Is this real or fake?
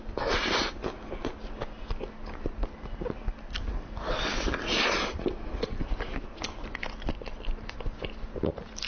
real